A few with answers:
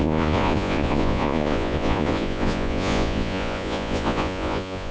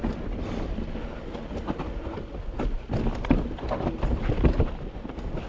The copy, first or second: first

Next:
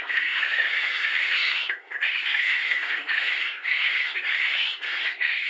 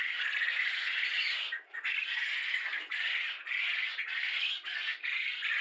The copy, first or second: first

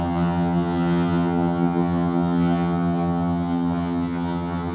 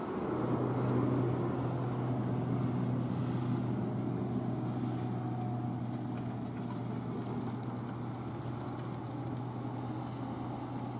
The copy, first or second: first